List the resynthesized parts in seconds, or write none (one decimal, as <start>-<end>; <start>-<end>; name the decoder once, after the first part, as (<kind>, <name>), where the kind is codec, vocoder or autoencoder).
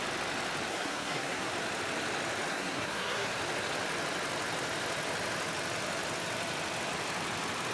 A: 0.7-1.5 (codec, SNAC); 2.5-3.3